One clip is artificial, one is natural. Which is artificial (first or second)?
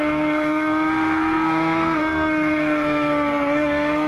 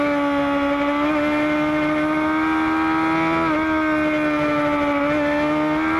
first